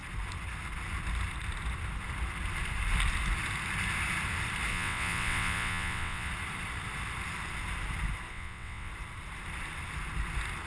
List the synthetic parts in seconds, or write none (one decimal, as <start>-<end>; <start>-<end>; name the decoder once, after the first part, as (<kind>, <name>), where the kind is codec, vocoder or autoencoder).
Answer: 4.7-6.3 (vocoder, WaveNeXt); 8.3-8.9